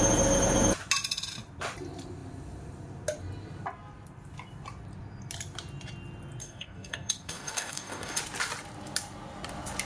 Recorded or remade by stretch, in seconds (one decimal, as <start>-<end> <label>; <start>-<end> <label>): 0.0-6.4 recorded; 6.4-8.2 remade; 8.2-9.9 recorded